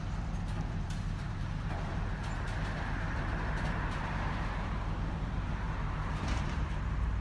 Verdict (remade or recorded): remade